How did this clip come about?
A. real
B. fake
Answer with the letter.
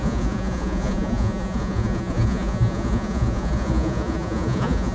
B